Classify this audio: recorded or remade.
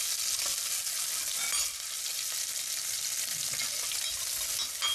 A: recorded